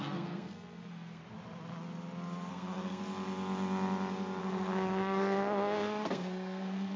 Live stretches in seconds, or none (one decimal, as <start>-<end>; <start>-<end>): 1.2-2.5; 3.0-4.4